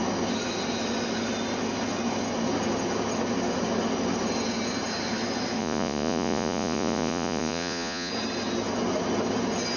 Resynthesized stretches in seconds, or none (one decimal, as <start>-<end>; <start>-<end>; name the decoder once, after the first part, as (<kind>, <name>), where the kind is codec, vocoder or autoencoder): 5.6-8.1 (vocoder, Vocos)